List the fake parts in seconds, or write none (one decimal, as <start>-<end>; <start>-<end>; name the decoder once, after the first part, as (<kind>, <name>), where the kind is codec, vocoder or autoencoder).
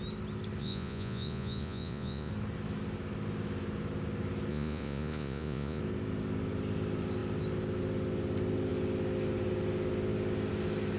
0.6-2.3 (vocoder, Vocos); 4.5-5.8